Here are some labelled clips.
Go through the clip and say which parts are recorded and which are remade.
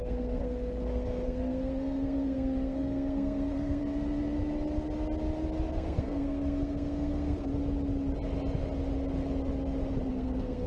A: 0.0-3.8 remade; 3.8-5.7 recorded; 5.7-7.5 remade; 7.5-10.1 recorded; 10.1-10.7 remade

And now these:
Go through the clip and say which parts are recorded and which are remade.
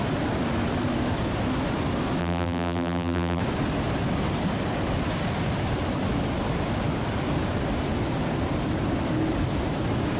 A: 0.0-2.2 recorded; 2.2-3.4 remade; 3.4-10.2 recorded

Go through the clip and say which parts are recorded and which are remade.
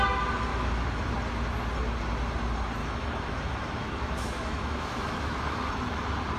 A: 0.0-0.5 recorded; 0.5-1.0 remade; 1.0-2.8 recorded; 2.8-5.7 remade; 5.7-6.4 recorded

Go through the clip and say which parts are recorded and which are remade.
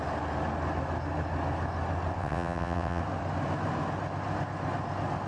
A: 0.0-2.2 recorded; 2.2-3.0 remade; 3.0-5.3 recorded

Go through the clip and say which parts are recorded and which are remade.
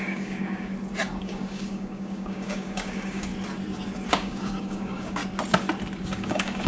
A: 0.0-0.7 remade; 0.7-1.2 recorded; 1.2-3.3 remade; 3.3-4.1 recorded; 4.1-5.2 remade; 5.2-6.0 recorded; 6.0-6.7 remade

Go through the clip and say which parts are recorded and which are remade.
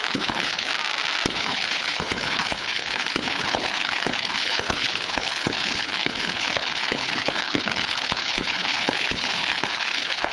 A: 0.0-0.7 remade; 0.7-1.3 recorded; 1.3-10.3 remade